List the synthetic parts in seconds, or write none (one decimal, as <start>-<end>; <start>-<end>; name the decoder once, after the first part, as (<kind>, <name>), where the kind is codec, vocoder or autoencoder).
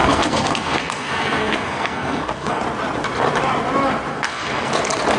0.0-2.6 (codec, SNAC); 4.1-4.7